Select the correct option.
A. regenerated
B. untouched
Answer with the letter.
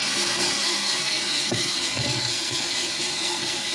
A